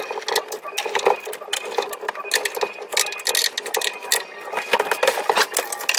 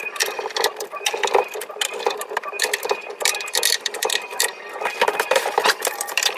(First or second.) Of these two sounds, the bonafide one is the first